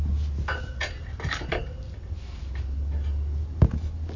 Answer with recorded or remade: recorded